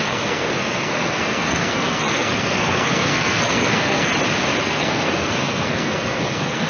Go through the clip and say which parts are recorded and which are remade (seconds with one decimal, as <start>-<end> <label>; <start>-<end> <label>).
0.0-4.1 remade; 4.1-4.6 recorded; 4.6-6.7 remade

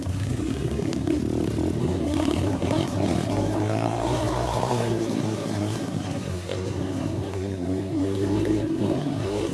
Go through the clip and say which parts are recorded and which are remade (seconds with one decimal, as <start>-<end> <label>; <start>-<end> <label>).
0.0-1.2 remade; 1.2-1.8 recorded; 1.8-9.5 remade

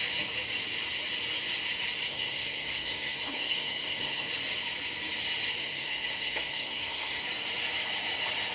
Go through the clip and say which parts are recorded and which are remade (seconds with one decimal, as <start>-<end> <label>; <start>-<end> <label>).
0.0-2.1 recorded; 2.1-4.3 remade; 4.3-5.6 recorded; 5.6-7.2 remade; 7.2-8.5 recorded

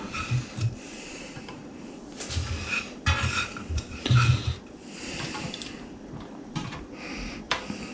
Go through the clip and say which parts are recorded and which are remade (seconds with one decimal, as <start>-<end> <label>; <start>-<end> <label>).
0.0-7.9 recorded

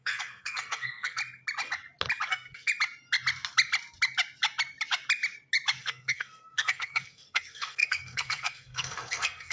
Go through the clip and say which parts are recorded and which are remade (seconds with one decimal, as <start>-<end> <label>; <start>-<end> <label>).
0.0-1.2 remade; 1.2-2.3 recorded; 2.3-2.7 remade; 2.7-5.8 recorded; 5.8-9.5 remade

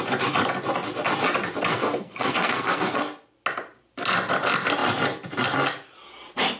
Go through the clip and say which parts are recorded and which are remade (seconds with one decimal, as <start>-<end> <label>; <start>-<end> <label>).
0.0-1.7 recorded; 1.7-3.0 remade; 3.0-6.6 recorded

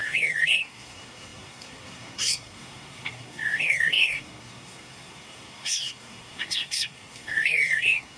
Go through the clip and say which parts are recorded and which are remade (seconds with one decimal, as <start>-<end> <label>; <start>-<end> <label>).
0.0-8.2 remade